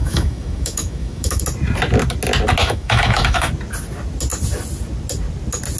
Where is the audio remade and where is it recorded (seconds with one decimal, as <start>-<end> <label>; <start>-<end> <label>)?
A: 0.0-1.4 remade; 1.4-2.6 recorded; 2.6-3.5 remade; 3.5-5.8 recorded